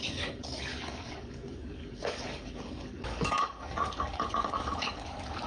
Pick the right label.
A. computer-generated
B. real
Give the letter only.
A